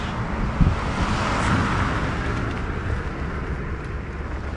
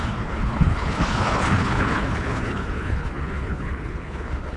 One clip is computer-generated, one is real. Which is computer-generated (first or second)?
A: second